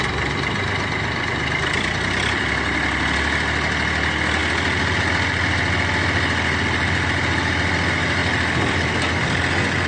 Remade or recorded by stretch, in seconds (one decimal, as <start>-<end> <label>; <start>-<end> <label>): 0.0-9.9 recorded